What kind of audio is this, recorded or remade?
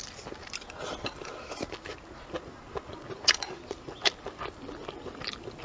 recorded